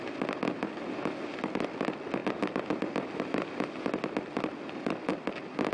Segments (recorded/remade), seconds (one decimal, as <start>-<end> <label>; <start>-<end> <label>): 0.0-5.7 recorded